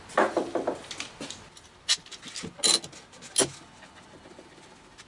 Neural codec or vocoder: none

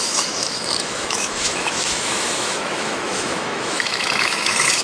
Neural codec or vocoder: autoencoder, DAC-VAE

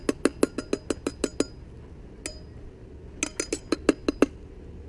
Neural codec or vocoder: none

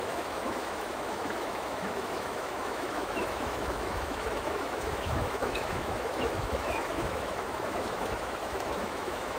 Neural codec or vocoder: autoencoder, DAC-VAE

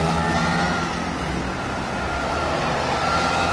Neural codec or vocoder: none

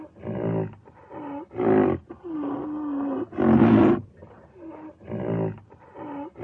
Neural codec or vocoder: none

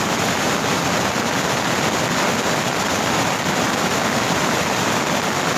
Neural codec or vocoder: none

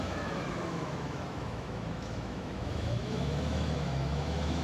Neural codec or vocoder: autoencoder, DAC-VAE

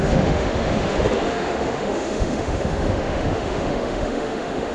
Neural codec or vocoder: autoencoder, DAC-VAE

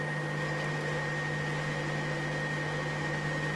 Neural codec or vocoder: none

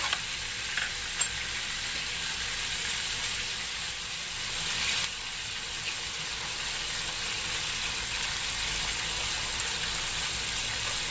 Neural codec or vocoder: none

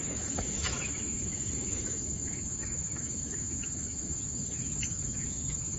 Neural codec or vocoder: autoencoder, DAC-VAE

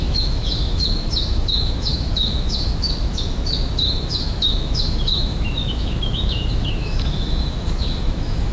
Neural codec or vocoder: autoencoder, DAC-VAE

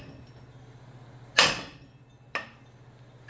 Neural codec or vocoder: none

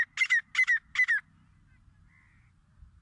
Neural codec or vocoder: none